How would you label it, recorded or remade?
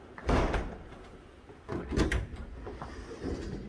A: remade